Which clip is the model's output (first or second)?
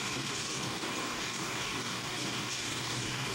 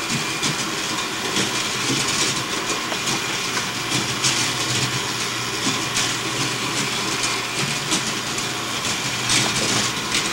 first